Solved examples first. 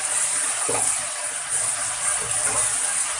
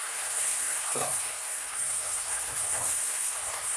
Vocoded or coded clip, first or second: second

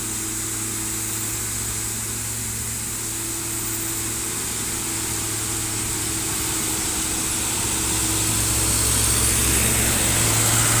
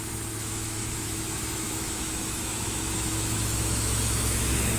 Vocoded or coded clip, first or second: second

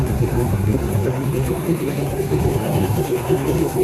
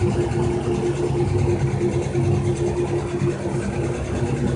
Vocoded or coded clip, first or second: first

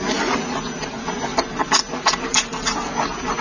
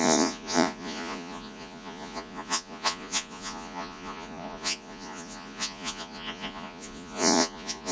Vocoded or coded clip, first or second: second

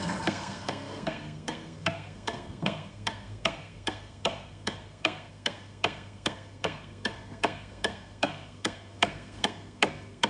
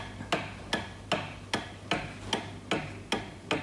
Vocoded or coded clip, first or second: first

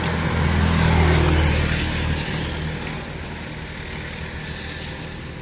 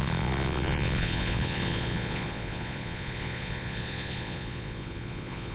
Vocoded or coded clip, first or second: second